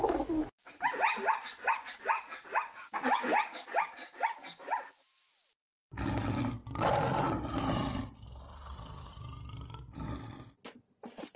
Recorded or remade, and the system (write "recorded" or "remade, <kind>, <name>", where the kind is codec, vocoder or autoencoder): recorded